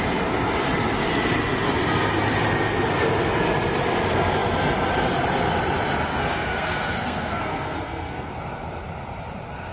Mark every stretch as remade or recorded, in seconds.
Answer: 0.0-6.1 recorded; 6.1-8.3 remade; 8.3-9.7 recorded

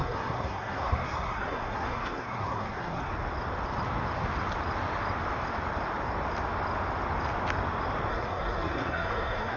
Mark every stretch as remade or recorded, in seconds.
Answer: 0.0-3.1 remade; 3.1-8.1 recorded; 8.1-9.6 remade

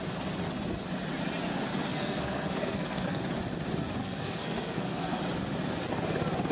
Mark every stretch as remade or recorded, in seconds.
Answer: 0.0-1.9 recorded; 1.9-3.2 remade; 3.2-4.0 recorded; 4.0-5.2 remade; 5.2-6.5 recorded

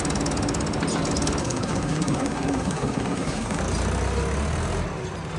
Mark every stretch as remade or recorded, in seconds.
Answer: 0.0-1.4 recorded; 1.4-3.6 remade; 3.6-5.4 recorded

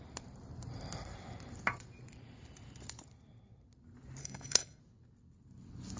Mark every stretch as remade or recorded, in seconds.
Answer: 0.0-4.2 recorded; 4.2-4.8 remade; 4.8-6.0 recorded

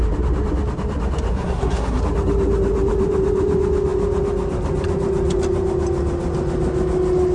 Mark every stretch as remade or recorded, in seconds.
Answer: 0.0-1.3 recorded; 1.3-2.0 remade; 2.0-7.3 recorded

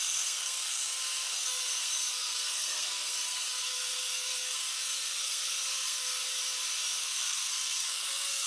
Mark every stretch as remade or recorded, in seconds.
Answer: 0.0-6.2 remade; 6.2-7.0 recorded; 7.0-8.5 remade